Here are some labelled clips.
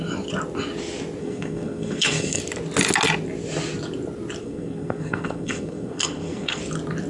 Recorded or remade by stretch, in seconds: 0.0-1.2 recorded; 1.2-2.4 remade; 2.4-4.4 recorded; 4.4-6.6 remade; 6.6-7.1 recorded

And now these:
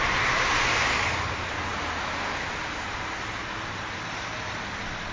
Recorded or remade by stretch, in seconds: 0.0-5.1 recorded

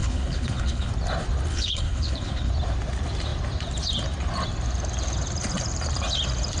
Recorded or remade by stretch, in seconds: 0.0-0.9 remade; 0.9-1.5 recorded; 1.5-2.5 remade; 2.5-6.6 recorded

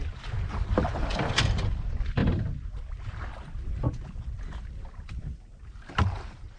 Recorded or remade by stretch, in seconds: 0.0-6.6 recorded

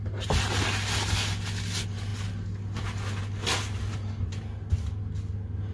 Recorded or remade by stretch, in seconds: 0.0-5.7 recorded

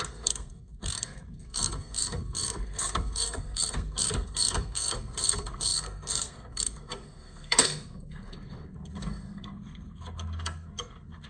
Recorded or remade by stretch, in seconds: 0.0-11.3 remade

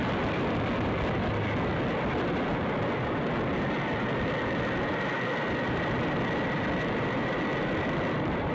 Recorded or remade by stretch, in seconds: 0.0-8.5 recorded

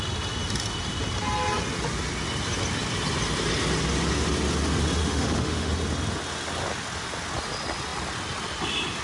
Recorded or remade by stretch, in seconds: 0.0-5.0 recorded; 5.0-5.7 remade; 5.7-9.0 recorded